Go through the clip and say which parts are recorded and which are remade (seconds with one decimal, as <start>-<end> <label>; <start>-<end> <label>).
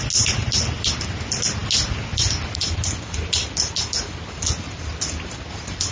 0.0-5.9 recorded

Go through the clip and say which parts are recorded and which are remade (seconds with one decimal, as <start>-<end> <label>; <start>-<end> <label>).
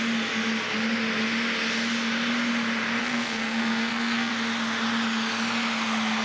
0.0-3.0 recorded; 3.0-4.3 remade; 4.3-6.2 recorded